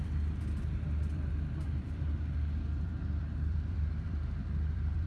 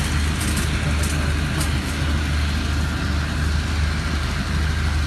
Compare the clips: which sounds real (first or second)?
second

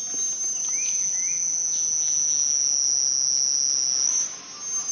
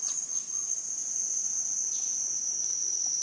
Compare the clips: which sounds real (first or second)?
first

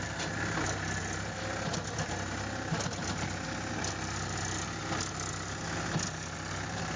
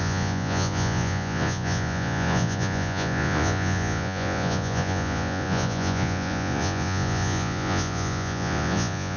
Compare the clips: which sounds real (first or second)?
first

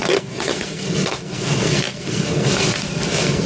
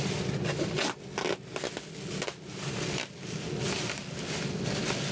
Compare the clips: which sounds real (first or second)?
second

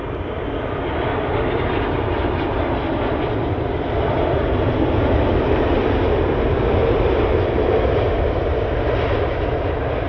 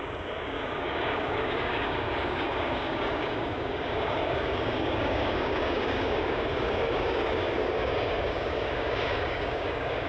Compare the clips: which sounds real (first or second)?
first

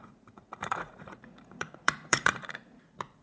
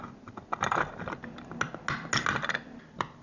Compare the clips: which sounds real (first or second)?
second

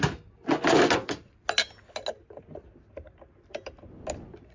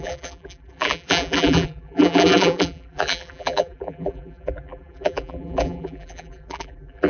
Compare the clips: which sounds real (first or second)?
first